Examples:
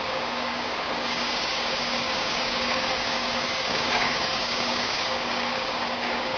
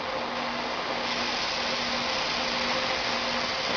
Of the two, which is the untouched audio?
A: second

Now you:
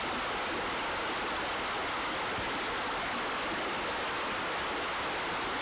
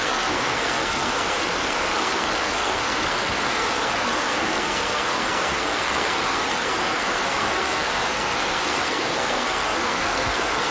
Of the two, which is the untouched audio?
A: first